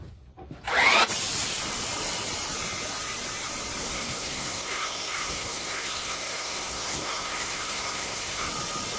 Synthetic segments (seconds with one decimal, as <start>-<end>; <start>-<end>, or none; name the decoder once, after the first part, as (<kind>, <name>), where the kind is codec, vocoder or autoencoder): 3.8-8.5 (codec, SNAC)